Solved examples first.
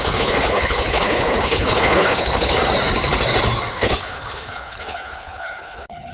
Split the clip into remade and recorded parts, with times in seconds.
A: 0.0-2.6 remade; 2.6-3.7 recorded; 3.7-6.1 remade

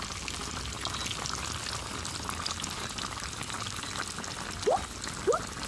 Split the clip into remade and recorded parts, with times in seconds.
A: 0.0-5.7 recorded